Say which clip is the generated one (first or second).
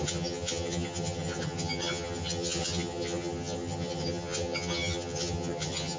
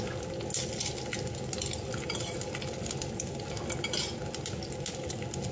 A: first